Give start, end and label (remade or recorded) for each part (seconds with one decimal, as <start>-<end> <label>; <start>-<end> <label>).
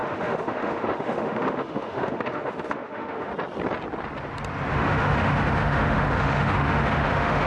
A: 0.0-3.3 remade; 3.3-4.7 recorded; 4.7-7.5 remade